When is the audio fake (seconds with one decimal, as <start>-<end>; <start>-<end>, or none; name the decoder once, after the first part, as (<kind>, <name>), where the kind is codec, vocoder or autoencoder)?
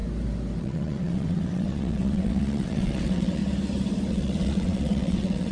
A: 0.6-3.4 (vocoder, WaveNeXt); 4.1-5.5